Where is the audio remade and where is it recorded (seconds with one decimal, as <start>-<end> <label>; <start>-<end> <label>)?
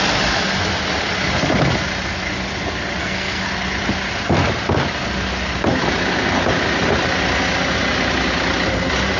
0.0-3.0 recorded; 3.0-3.5 remade; 3.5-9.2 recorded